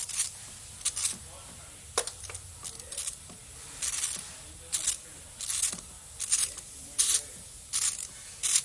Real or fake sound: real